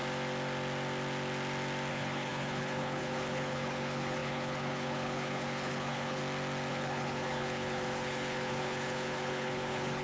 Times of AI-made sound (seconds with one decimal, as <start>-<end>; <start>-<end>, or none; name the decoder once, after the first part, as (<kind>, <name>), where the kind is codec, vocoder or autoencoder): 1.9-6.2 (codec, HILCodec); 6.7-10.0

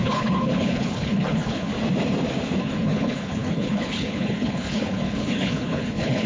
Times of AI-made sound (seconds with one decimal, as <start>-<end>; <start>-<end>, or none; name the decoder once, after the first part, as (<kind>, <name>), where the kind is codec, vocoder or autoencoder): 0.0-1.7 (codec, HILCodec); 2.6-6.3

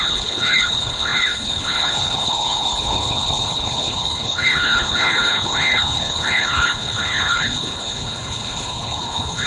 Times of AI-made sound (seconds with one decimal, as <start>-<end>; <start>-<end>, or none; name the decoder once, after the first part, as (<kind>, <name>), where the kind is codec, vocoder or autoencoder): 0.0-9.5 (codec, HILCodec)

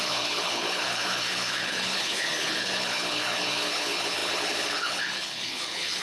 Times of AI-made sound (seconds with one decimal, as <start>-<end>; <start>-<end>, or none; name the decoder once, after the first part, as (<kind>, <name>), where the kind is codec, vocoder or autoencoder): 0.0-6.0 (codec, HILCodec)

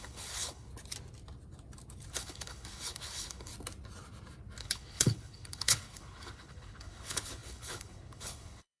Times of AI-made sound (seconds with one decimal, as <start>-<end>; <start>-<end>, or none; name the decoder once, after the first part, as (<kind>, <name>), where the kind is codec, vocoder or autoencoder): 0.0-0.7 (codec, HILCodec); 2.1-3.5; 4.6-8.8

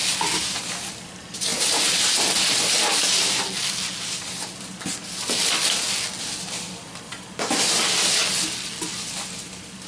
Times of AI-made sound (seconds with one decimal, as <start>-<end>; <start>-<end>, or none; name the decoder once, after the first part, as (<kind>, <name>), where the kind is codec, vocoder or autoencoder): none

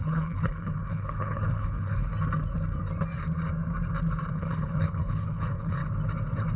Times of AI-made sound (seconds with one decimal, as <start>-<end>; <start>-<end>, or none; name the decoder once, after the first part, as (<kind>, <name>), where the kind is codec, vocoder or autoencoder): 0.0-2.1 (codec, HILCodec); 4.3-5.8

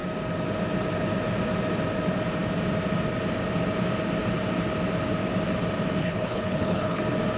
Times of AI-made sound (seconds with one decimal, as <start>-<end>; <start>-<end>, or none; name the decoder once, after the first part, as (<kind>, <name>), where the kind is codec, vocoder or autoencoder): 6.0-7.0 (codec, HILCodec)